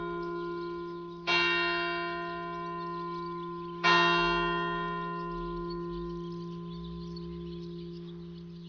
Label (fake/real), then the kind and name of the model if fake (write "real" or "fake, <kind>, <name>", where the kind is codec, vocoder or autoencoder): real